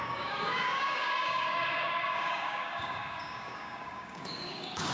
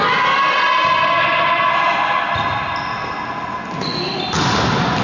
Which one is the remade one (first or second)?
first